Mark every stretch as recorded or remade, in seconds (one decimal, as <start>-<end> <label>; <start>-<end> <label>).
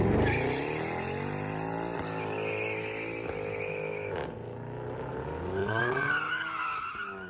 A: 0.0-5.6 recorded; 5.6-6.1 remade; 6.1-7.3 recorded